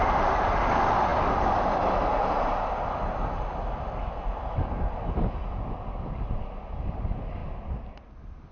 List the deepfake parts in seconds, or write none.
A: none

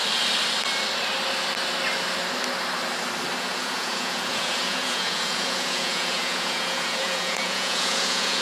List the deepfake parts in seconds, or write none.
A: 3.4-8.4 (vocoder, Vocos)

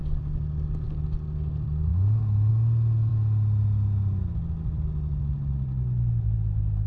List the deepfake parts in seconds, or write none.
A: none

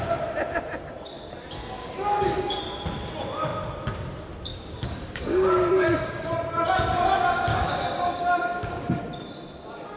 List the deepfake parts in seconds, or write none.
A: 1.8-2.6 (codec, DAC); 4.5-6.3; 7.5-9.0

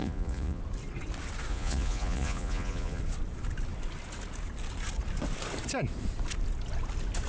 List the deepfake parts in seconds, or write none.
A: 0.0-0.6 (vocoder, Vocos); 1.5-3.0

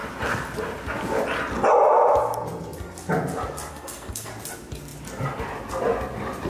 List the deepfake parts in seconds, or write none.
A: 3.7-4.3 (codec, SNAC)

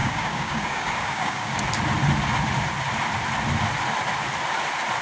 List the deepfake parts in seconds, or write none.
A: 0.0-1.6 (codec, DAC)

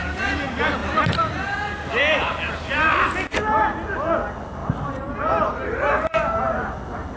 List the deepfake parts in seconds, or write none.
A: none